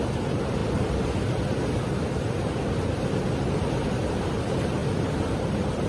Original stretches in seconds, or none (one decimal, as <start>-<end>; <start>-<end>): 0.6-4.1